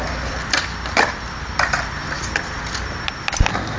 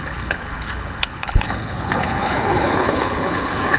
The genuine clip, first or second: first